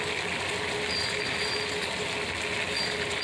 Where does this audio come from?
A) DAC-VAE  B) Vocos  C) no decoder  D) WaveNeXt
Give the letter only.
C